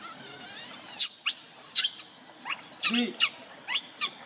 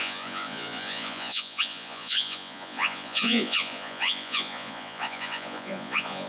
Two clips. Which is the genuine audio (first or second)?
first